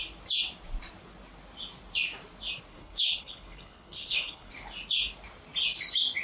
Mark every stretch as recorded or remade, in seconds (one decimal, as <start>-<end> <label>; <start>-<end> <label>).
0.0-2.7 recorded; 2.7-4.5 remade; 4.5-6.2 recorded